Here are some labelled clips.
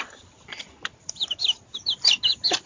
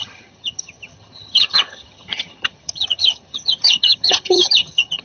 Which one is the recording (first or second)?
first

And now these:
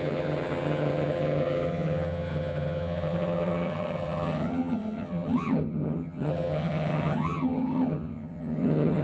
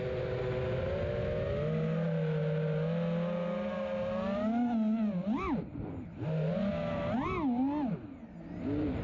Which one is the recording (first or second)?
second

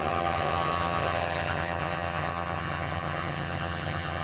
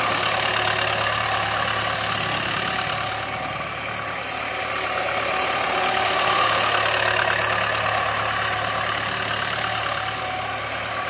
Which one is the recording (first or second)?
second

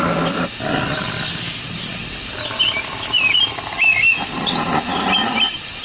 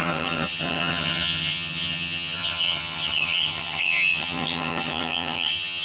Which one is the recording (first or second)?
first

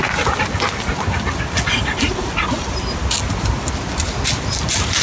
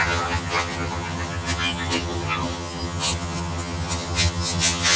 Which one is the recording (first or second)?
first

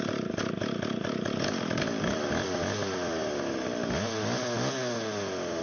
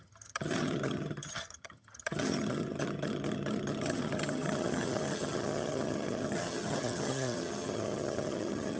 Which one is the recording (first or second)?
first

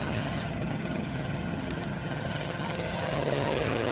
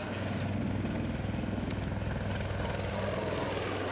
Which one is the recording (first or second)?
second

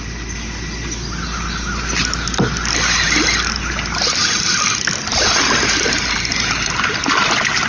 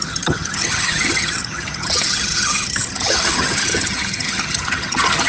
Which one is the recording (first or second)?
first